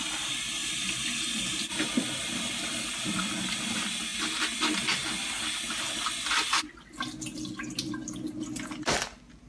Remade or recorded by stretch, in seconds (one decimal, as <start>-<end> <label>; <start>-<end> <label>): 0.0-9.5 recorded